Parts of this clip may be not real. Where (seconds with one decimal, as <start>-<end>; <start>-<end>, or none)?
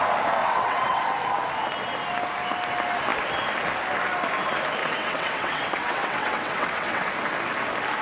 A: 0.4-1.0; 4.8-7.1